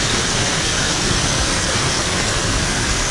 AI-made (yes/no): yes